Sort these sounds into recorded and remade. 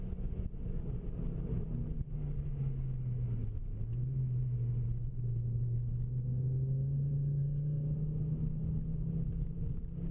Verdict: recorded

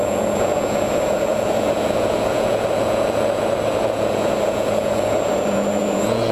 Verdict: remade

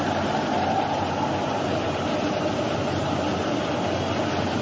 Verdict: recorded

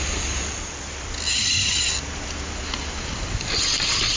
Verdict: recorded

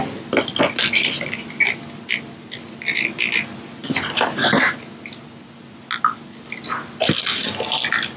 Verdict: recorded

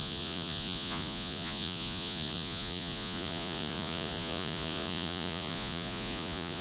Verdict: remade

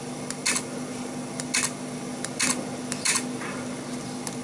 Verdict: recorded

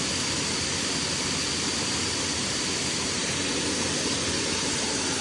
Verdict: recorded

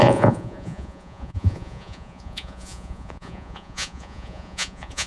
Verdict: remade